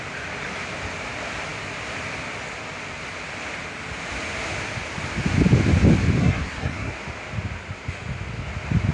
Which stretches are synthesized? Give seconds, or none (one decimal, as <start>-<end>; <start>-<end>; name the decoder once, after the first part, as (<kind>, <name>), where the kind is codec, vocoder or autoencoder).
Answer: 6.2-6.9 (codec, SNAC)